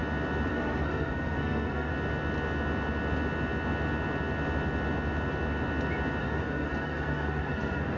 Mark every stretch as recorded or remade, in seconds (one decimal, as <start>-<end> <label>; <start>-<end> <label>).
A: 0.0-0.5 recorded; 0.5-1.9 remade; 1.9-6.2 recorded; 6.2-8.0 remade